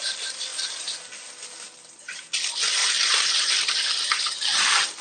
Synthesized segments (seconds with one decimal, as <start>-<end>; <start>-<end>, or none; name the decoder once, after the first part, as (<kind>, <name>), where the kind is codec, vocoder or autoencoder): 0.0-0.5 (vocoder, BigVGAN v2); 1.9-2.8; 4.6-5.0